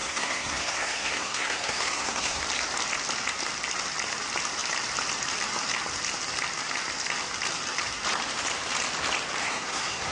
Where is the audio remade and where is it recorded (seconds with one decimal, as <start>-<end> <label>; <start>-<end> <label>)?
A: 0.0-2.4 remade; 2.4-9.4 recorded; 9.4-10.1 remade